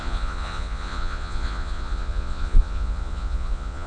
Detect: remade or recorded remade